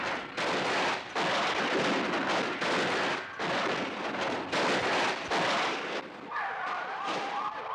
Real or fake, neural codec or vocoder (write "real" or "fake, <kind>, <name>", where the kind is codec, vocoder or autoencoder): real